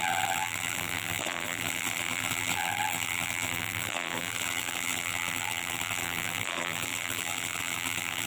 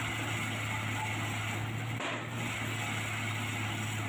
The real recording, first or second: second